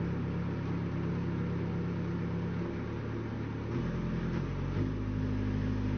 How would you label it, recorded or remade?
recorded